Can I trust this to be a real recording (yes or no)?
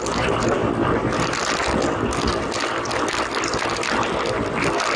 yes